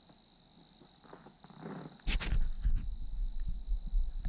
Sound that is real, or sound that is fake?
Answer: real